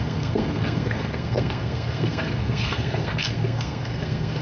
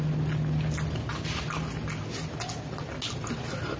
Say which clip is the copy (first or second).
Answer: first